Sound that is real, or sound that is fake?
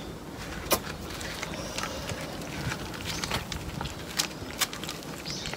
real